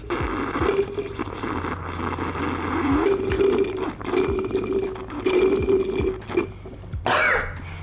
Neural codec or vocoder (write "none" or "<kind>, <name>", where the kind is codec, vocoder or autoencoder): none